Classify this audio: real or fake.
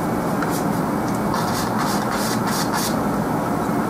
real